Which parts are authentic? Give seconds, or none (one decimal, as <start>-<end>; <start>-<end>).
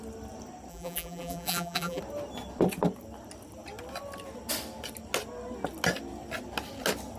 0.0-0.7; 2.0-7.2